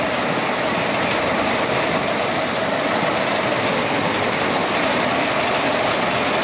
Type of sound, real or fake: real